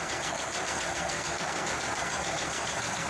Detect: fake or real fake